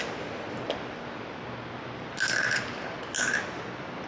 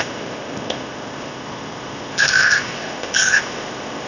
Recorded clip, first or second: first